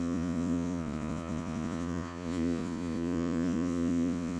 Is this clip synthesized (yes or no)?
yes